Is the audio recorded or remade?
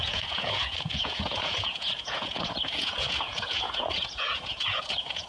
remade